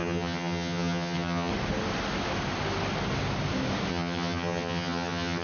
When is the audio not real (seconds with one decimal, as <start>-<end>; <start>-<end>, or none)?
0.0-1.5; 3.9-5.4